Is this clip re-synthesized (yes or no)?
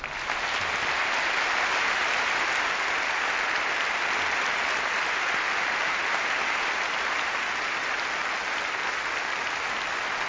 no